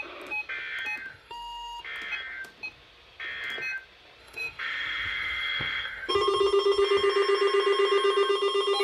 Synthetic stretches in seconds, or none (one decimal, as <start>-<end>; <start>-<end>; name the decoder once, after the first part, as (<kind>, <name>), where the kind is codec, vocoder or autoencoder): 1.1-1.8 (autoencoder, DAC-VAE); 4.2-6.1